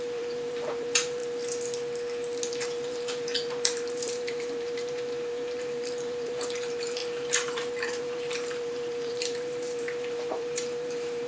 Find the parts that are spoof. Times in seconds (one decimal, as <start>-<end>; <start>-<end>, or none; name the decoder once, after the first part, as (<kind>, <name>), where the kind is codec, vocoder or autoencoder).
0.0-1.2 (vocoder, BigVGAN v2); 2.5-11.3

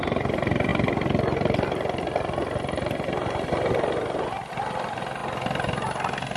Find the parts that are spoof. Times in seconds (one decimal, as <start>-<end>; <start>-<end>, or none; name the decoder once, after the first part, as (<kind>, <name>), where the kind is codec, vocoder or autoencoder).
none

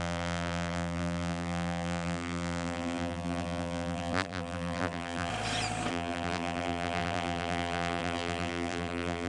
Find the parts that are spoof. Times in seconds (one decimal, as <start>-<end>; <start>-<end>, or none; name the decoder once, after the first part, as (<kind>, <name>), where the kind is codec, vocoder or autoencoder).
0.0-5.3 (vocoder, BigVGAN v2); 5.9-9.3

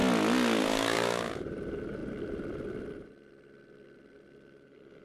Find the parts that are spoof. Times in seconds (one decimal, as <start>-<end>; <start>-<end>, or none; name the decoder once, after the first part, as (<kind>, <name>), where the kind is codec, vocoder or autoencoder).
0.6-2.0 (vocoder, BigVGAN v2)

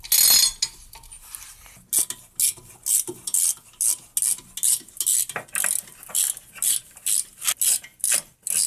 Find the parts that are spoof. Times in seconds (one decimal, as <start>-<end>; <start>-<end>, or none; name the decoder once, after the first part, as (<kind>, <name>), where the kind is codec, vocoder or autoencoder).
none

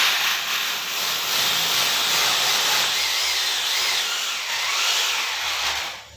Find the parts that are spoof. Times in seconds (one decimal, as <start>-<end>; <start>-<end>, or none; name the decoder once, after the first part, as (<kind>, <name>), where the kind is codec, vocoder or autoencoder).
none